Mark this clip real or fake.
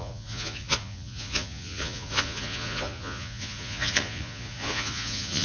fake